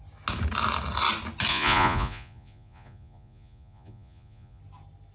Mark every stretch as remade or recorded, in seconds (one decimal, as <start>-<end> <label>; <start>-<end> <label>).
0.0-1.5 recorded; 1.5-4.6 remade; 4.6-5.1 recorded